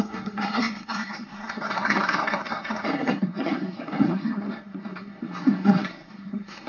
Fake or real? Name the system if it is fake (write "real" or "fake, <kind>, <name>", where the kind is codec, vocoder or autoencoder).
fake, codec, SNAC